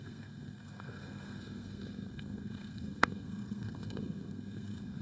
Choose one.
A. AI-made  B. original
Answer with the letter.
A